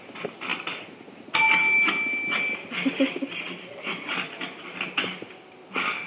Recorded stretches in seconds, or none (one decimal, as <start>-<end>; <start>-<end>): 0.0-6.1